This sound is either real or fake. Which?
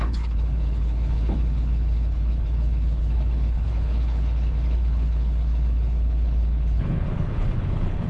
fake